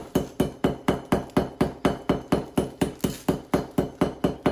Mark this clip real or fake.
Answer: real